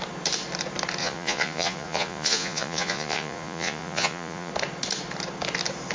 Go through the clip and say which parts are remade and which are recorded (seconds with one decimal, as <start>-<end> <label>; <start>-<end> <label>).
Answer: 0.0-1.0 recorded; 1.0-4.5 remade; 4.5-5.9 recorded